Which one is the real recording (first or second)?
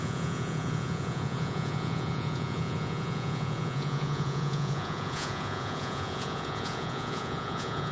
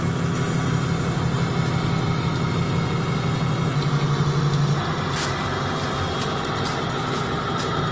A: second